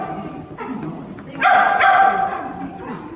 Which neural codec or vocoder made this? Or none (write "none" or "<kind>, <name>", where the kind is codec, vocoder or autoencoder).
none